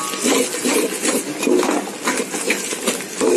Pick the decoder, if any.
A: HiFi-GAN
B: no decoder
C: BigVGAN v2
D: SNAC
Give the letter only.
B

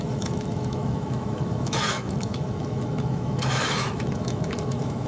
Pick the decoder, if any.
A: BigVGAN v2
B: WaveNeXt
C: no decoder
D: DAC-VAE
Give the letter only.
D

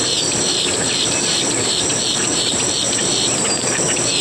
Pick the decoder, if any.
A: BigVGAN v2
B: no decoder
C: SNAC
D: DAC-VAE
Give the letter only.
A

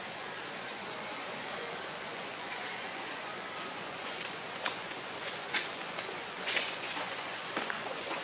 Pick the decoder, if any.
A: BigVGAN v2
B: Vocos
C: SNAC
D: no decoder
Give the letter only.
B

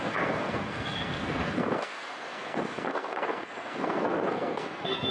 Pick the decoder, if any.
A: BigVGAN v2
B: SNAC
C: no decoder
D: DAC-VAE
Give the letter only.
B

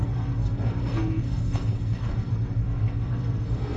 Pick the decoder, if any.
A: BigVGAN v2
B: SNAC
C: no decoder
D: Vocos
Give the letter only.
B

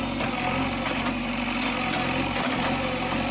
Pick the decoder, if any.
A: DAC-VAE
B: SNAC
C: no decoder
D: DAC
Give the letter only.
C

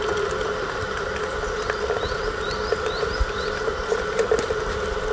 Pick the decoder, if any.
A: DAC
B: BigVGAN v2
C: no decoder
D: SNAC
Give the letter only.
C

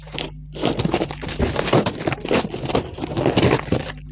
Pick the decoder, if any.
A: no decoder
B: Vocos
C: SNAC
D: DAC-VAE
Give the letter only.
A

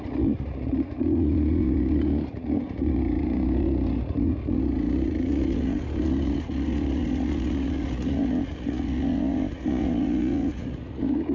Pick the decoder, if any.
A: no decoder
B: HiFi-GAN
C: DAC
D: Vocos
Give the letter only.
D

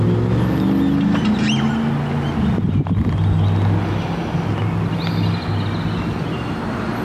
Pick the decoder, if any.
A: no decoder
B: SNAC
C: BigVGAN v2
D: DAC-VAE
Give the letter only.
A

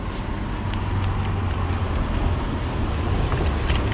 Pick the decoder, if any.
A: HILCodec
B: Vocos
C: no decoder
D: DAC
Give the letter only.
C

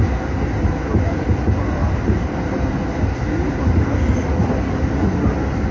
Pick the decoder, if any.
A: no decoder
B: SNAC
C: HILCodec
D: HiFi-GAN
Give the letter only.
A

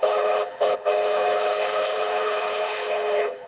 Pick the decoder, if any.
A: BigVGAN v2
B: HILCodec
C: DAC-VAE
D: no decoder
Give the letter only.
B